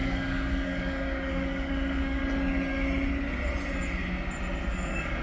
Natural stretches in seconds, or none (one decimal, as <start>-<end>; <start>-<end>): 2.2-4.7